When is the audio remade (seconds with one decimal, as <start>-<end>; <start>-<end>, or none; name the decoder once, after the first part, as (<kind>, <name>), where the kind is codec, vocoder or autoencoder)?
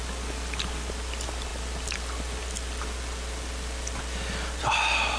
none